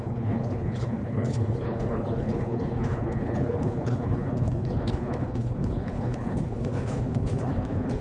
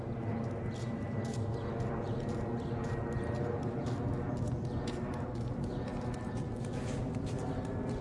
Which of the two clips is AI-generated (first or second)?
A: first